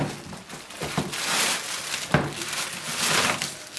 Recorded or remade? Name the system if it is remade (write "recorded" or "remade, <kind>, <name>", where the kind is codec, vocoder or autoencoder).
recorded